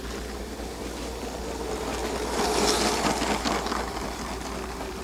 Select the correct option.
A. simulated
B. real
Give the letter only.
B